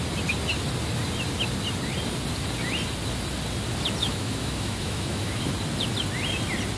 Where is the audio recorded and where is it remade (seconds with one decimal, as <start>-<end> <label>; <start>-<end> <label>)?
0.0-4.0 recorded; 4.0-5.5 remade; 5.5-6.8 recorded